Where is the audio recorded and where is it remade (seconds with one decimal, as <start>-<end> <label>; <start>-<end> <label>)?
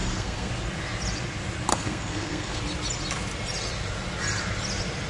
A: 0.0-0.5 remade; 0.5-1.7 recorded; 1.7-2.6 remade; 2.6-5.1 recorded